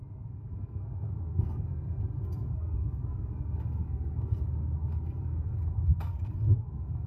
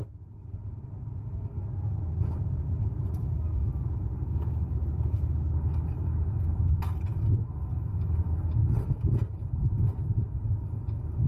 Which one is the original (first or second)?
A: second